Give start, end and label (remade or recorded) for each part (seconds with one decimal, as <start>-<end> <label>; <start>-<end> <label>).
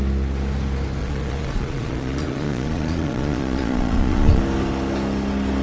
0.0-1.0 recorded; 1.0-4.4 remade; 4.4-5.6 recorded